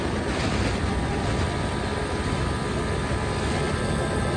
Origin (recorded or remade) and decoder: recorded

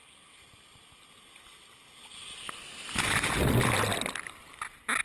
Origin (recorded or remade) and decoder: recorded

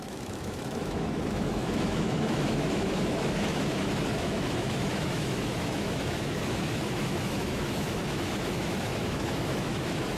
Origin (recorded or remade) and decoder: remade, autoencoder, DAC-VAE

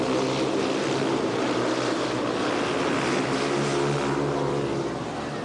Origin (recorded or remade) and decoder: recorded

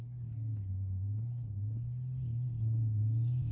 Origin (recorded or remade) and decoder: recorded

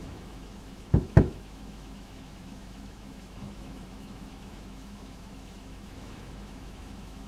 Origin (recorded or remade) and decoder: remade, autoencoder, DAC-VAE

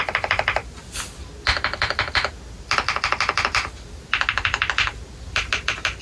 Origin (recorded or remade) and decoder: recorded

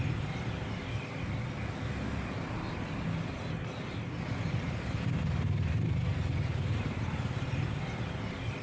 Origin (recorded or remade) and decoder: recorded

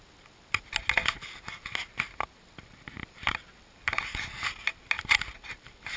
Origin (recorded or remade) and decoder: recorded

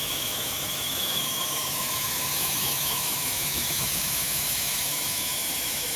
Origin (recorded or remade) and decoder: remade, autoencoder, DAC-VAE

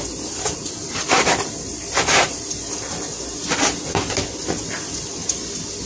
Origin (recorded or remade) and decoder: recorded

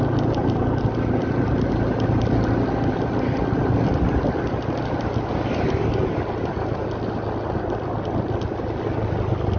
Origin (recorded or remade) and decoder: recorded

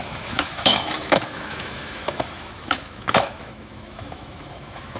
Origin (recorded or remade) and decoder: remade, autoencoder, DAC-VAE